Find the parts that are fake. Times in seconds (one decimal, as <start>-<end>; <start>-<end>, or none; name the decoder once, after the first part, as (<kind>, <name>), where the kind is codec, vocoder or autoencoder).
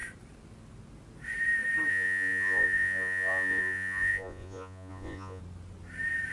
1.9-5.4 (vocoder, Vocos)